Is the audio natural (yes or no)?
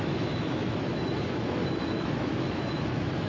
no